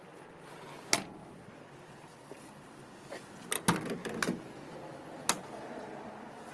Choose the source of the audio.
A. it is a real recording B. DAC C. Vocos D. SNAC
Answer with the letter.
A